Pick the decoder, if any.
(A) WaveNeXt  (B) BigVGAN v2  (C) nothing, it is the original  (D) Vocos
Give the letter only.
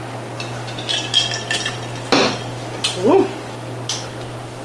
C